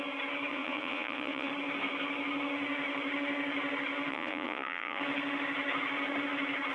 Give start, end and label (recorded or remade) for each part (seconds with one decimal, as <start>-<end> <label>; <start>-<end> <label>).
0.0-0.5 recorded; 0.5-1.5 remade; 1.5-4.1 recorded; 4.1-5.0 remade; 5.0-6.7 recorded